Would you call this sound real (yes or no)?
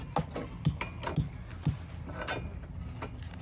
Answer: yes